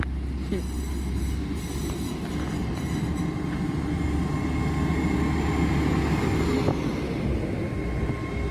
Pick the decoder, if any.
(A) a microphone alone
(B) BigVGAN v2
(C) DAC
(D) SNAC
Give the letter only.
A